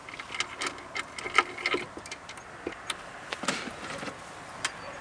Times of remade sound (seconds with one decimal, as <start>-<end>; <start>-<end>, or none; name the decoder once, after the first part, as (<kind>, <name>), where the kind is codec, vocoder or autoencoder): none

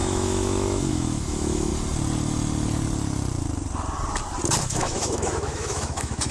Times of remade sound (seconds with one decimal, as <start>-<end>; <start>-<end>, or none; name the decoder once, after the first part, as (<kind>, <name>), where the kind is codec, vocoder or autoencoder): 0.0-1.7 (autoencoder, DAC-VAE); 4.6-6.3

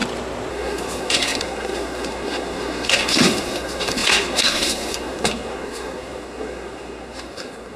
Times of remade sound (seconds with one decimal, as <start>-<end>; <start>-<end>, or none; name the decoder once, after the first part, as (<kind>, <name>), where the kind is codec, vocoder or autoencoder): 0.5-7.8 (codec, SNAC)

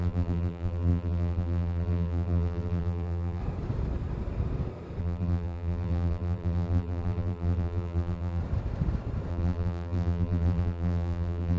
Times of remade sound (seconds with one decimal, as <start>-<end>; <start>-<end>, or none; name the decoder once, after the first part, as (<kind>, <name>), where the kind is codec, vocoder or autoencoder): 0.0-3.4 (vocoder, BigVGAN v2); 5.0-8.4; 9.3-11.6